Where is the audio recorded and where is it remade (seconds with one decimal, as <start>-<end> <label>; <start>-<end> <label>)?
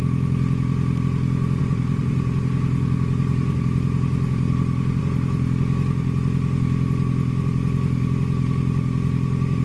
0.0-1.6 recorded; 1.6-5.0 remade; 5.0-9.6 recorded